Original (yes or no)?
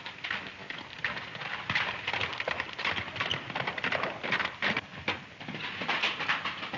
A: yes